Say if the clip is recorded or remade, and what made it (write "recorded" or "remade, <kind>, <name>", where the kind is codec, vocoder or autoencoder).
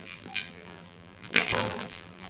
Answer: remade, vocoder, BigVGAN v2